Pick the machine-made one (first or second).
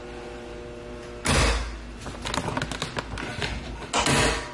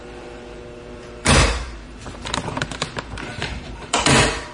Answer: second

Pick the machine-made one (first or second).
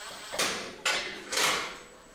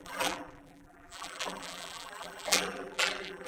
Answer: second